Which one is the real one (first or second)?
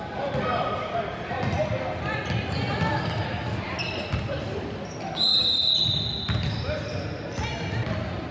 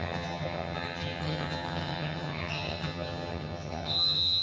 first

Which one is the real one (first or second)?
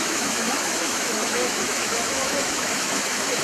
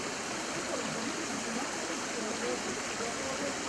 second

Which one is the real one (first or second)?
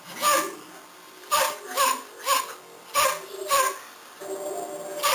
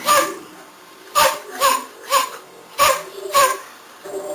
first